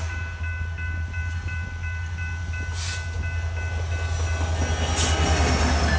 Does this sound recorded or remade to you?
recorded